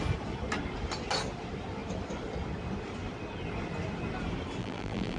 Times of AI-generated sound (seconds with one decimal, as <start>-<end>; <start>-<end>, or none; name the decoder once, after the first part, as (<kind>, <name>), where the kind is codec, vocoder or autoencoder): 4.6-5.2 (vocoder, BigVGAN v2)